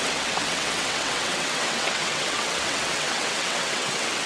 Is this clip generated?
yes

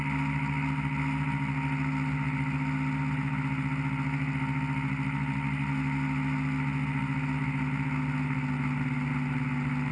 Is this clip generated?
no